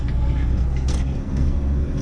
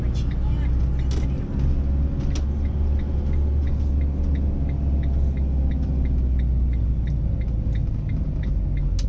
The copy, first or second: first